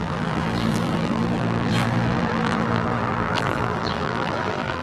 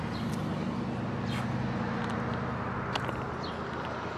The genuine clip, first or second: second